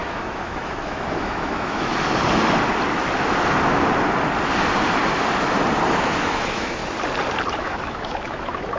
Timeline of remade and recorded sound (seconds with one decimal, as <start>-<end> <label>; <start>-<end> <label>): 0.0-1.9 remade; 1.9-5.9 recorded; 5.9-6.8 remade; 6.8-7.5 recorded; 7.5-8.8 remade